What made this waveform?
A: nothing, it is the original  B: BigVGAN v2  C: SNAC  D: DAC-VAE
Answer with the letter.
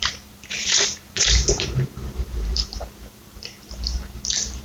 B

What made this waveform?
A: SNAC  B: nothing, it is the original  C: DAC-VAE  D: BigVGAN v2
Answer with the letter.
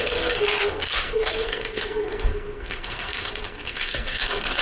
A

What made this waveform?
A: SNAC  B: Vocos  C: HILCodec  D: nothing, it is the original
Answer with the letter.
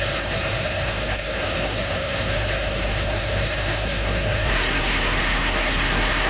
A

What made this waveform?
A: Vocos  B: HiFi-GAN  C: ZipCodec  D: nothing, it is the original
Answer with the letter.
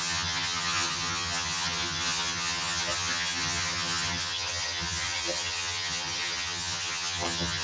B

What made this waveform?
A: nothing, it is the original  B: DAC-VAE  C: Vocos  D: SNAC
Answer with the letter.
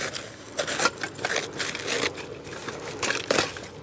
A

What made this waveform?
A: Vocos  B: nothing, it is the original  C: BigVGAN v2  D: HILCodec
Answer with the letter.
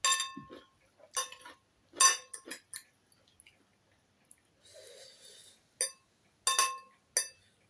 B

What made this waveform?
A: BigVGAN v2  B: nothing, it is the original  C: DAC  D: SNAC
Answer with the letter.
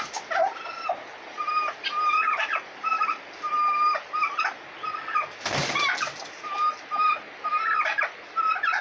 B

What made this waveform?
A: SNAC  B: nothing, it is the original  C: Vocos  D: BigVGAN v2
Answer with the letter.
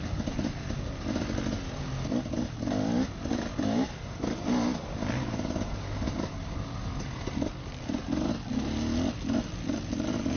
B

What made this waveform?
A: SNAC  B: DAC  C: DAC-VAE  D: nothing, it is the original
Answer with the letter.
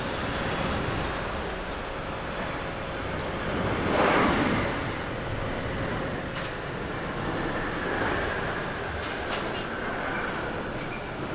D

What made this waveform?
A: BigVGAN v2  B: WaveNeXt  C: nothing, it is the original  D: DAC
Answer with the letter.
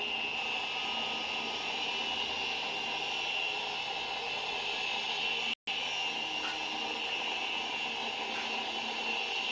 C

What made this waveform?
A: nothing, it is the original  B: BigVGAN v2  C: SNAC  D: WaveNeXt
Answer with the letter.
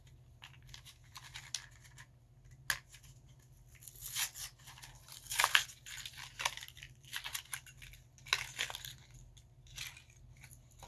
A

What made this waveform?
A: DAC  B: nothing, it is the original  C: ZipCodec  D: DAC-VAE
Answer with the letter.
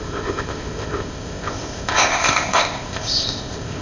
C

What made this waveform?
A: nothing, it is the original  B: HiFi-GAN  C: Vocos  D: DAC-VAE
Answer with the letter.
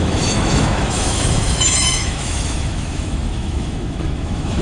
D